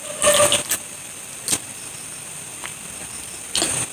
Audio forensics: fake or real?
real